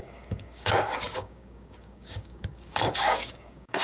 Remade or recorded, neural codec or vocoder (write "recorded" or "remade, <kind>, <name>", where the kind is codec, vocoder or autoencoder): remade, codec, DAC